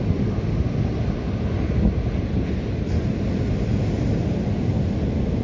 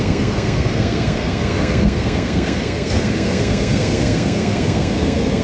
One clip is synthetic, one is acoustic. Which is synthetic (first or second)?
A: second